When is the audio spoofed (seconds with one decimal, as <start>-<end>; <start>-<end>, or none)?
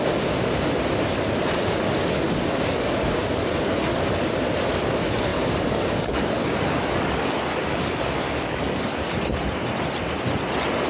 5.3-9.1